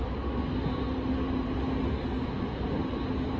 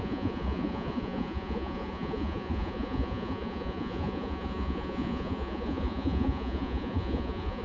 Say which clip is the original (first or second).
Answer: first